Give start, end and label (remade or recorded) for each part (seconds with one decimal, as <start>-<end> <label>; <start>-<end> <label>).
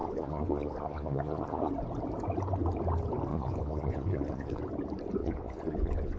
0.0-1.7 remade; 1.7-3.3 recorded; 3.3-4.6 remade; 4.6-5.2 recorded; 5.2-6.2 remade